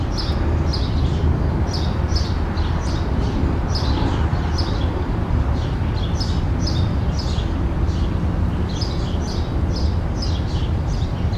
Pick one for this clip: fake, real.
real